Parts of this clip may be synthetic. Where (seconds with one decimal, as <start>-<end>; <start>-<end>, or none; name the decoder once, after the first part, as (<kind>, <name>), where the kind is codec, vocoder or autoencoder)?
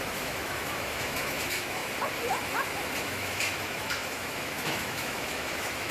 0.0-1.8 (autoencoder, DAC-VAE); 3.0-5.9